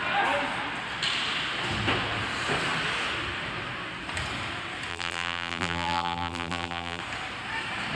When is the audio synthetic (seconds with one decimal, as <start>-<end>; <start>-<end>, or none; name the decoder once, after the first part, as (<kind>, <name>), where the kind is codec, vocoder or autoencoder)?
4.9-7.0 (vocoder, BigVGAN v2)